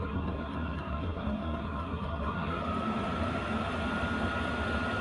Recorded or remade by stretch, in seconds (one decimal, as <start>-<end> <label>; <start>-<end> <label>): 0.0-2.6 remade; 2.6-5.0 recorded